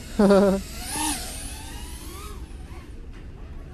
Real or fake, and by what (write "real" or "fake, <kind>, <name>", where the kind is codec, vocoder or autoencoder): real